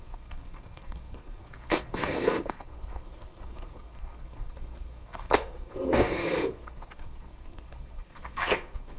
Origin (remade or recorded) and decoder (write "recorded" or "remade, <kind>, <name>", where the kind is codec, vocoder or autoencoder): remade, codec, SNAC